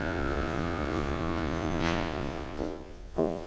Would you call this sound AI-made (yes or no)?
yes